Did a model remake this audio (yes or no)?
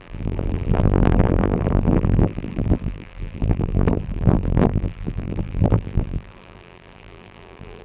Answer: yes